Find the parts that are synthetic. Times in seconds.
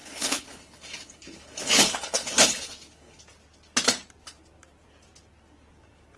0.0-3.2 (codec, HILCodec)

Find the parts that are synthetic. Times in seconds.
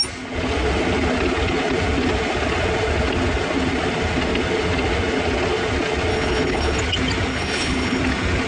6.1-6.8 (codec, HILCodec); 7.3-8.0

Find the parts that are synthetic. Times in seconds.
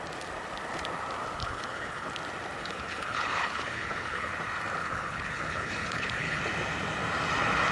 1.4-2.1 (codec, HILCodec); 2.6-4.3; 4.8-6.4